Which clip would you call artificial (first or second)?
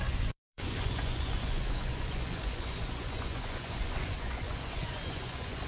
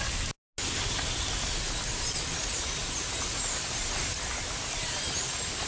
first